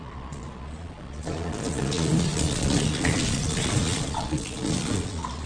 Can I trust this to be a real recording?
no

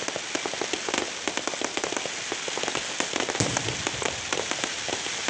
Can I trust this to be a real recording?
yes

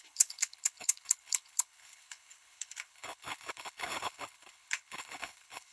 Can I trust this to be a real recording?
no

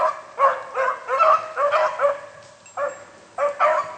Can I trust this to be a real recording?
yes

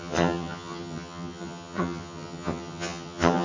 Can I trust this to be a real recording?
no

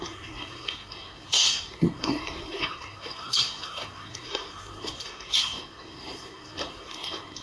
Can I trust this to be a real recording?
no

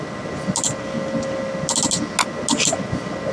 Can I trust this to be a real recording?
yes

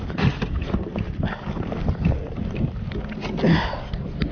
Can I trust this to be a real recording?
yes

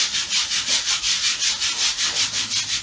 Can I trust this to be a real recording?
yes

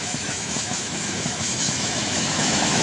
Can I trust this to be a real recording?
no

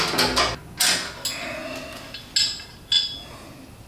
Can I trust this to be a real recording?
yes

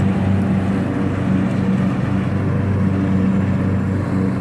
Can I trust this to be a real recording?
yes